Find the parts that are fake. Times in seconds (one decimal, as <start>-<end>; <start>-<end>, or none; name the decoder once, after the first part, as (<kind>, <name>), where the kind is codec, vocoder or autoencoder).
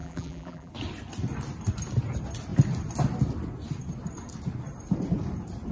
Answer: 0.0-0.7 (vocoder, BigVGAN v2)